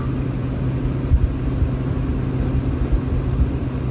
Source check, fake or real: real